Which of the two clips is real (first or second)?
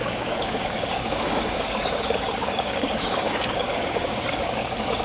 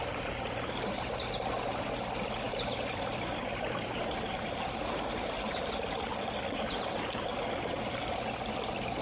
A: second